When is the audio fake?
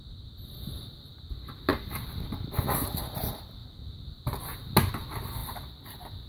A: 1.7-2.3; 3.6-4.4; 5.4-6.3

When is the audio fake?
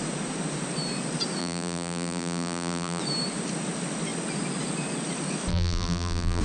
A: 1.4-3.0; 5.5-6.4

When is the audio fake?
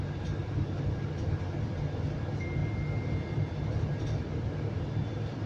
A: 0.4-1.1